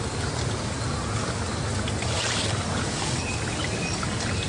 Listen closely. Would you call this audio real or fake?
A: real